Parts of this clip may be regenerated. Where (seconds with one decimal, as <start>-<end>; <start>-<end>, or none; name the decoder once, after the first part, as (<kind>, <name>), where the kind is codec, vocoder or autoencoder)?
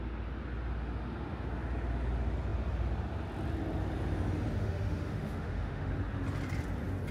4.6-5.9 (autoencoder, DAC-VAE)